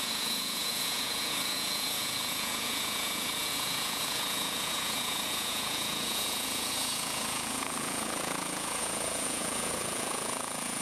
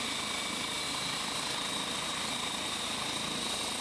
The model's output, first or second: first